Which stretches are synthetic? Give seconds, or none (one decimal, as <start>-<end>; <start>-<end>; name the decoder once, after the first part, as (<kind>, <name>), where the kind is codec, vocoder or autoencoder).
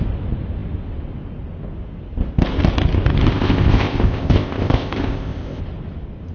3.3-5.6 (codec, ZipCodec)